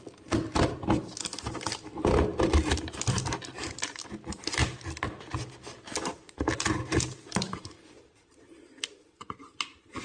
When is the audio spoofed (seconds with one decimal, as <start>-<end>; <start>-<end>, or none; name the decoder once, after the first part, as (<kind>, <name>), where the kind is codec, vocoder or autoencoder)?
none